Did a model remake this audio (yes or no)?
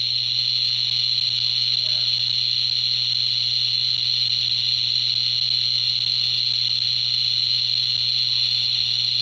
no